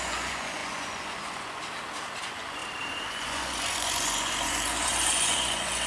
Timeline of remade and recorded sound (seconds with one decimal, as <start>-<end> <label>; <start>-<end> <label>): 0.0-1.6 remade; 1.6-2.2 recorded; 2.2-2.6 remade; 2.6-3.1 recorded; 3.1-5.9 remade